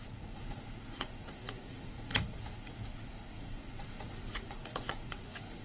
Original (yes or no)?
no